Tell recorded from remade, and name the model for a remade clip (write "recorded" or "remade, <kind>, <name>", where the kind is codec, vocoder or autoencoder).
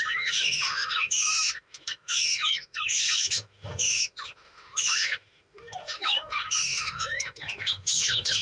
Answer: remade, autoencoder, DAC-VAE